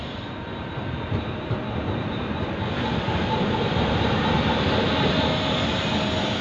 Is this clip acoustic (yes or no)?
yes